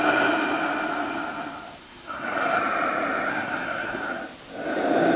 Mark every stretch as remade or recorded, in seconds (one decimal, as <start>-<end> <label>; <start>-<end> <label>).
0.0-1.8 recorded; 1.8-2.6 remade; 2.6-3.3 recorded; 3.3-4.2 remade; 4.2-5.2 recorded